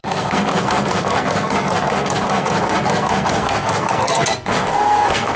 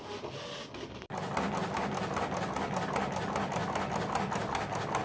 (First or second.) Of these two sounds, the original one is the second